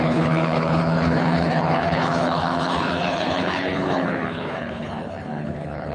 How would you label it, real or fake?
fake